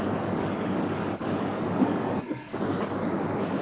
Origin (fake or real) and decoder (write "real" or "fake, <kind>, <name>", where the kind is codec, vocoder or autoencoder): fake, codec, DAC